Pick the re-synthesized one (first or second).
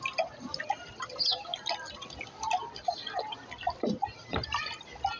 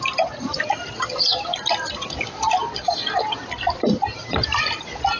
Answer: second